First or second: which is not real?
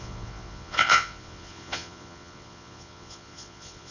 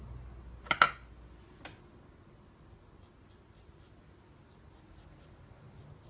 first